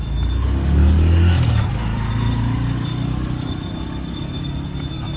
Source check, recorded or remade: remade